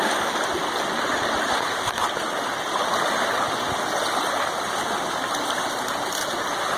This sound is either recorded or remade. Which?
recorded